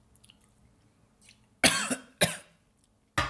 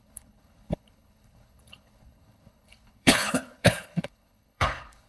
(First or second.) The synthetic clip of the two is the second